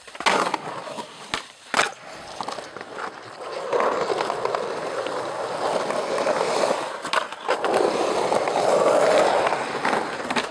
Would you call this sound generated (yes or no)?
no